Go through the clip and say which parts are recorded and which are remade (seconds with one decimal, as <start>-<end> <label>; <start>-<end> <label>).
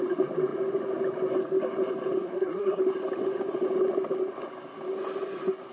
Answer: 0.0-2.2 recorded; 2.2-2.8 remade; 2.8-5.7 recorded